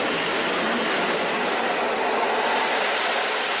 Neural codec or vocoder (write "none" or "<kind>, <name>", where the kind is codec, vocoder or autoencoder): none